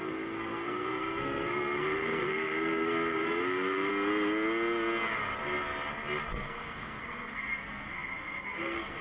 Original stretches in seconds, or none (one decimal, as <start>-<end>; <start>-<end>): 3.9-6.3